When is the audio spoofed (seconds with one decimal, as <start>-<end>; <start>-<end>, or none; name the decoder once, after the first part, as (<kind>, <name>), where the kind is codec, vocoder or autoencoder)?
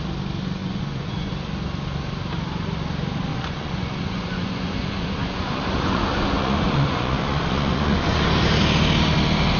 0.6-1.3 (vocoder, Vocos); 3.3-8.3